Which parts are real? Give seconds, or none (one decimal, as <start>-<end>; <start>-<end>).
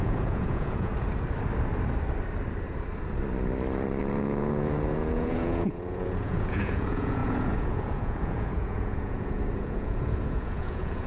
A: 0.9-4.0